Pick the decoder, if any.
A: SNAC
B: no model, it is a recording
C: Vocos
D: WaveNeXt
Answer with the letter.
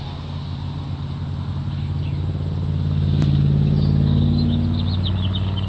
B